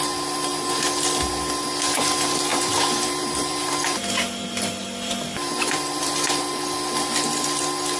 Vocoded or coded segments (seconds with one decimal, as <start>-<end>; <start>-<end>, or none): 2.5-6.4